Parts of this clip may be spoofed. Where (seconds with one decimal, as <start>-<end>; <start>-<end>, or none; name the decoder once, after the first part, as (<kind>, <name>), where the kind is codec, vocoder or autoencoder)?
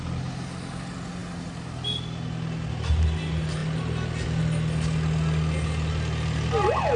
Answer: none